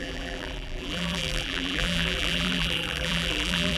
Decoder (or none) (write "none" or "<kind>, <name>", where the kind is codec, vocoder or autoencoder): vocoder, BigVGAN v2